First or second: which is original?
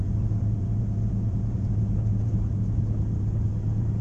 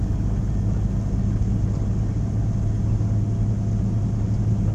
second